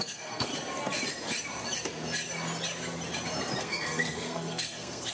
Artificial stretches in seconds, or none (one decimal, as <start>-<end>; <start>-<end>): 0.0-0.5; 3.6-5.1